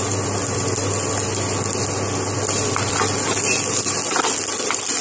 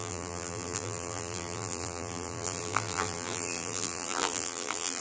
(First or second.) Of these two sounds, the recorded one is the first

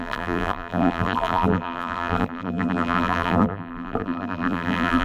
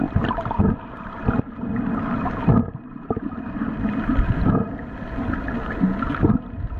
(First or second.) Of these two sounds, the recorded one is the second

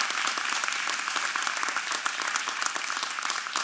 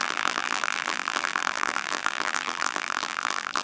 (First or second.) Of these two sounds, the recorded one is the first